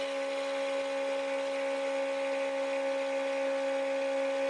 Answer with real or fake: real